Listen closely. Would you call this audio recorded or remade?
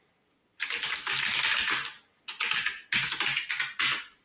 recorded